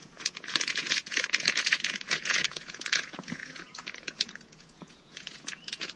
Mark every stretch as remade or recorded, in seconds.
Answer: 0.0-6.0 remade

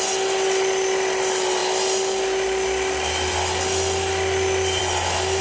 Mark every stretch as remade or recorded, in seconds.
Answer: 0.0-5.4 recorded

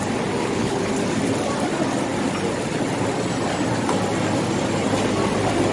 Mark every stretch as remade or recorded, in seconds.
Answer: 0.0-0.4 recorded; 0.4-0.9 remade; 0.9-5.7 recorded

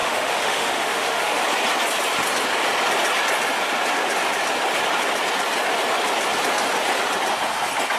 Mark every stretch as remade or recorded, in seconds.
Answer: 0.0-1.4 remade; 1.4-8.0 recorded

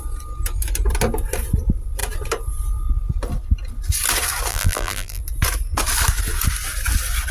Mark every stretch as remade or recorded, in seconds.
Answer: 0.0-4.5 recorded; 4.5-5.2 remade; 5.2-7.3 recorded

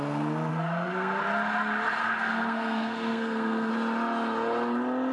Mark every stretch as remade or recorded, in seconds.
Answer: 0.0-0.5 recorded; 0.5-1.2 remade; 1.2-2.0 recorded; 2.0-3.7 remade; 3.7-5.1 recorded

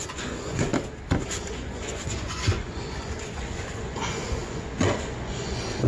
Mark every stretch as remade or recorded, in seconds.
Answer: 0.0-0.7 remade; 0.7-1.3 recorded; 1.3-5.9 remade